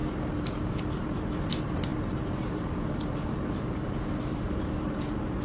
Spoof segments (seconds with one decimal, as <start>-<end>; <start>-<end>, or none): 1.0-5.4